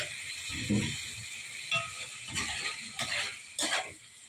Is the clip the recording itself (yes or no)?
yes